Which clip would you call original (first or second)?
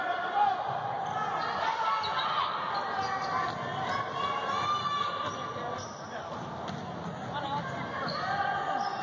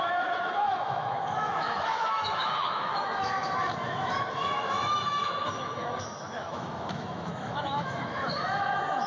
first